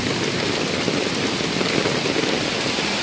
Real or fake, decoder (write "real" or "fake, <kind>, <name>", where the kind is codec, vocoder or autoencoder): real